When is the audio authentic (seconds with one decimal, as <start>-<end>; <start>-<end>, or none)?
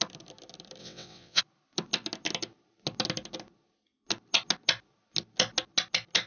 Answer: 0.0-0.8; 1.4-6.3